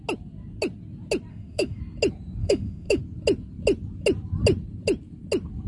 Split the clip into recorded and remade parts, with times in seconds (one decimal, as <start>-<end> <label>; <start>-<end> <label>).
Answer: 0.0-1.3 recorded; 1.3-1.8 remade; 1.8-2.4 recorded; 2.4-3.0 remade; 3.0-5.7 recorded